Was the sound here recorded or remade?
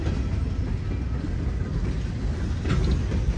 recorded